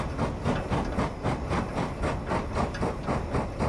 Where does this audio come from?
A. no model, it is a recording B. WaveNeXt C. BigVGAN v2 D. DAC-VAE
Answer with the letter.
A